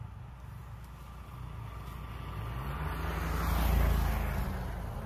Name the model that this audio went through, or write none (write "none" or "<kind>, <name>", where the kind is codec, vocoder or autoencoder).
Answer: none